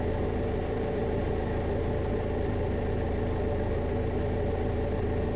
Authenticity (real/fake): real